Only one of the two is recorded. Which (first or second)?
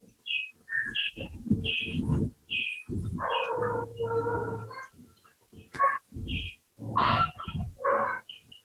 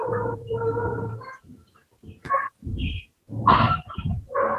first